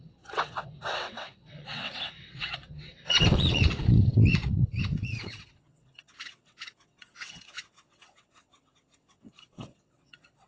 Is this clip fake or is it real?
fake